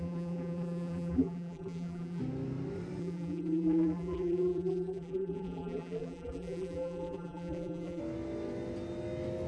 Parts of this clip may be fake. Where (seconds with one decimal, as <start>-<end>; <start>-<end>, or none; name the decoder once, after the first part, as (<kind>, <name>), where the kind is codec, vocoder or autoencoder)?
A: 0.0-2.2 (vocoder, BigVGAN v2); 3.0-8.0